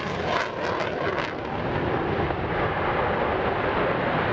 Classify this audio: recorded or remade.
recorded